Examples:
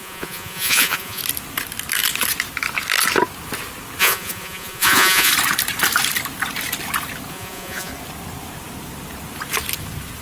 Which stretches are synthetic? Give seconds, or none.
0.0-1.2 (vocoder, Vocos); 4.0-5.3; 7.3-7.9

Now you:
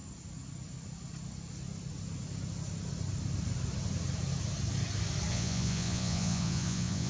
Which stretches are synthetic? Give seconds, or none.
5.3-7.1 (vocoder, Vocos)

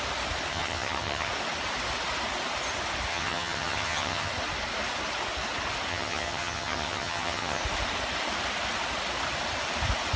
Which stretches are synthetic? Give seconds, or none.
0.5-1.3 (vocoder, HiFi-GAN); 3.1-4.3; 5.9-7.6